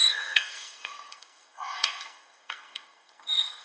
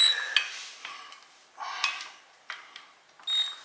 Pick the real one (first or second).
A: second